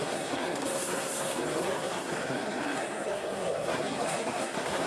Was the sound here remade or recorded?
remade